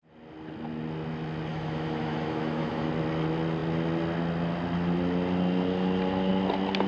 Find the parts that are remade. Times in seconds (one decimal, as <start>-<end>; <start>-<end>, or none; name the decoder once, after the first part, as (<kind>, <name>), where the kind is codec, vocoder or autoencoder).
1.5-2.9 (autoencoder, DAC-VAE)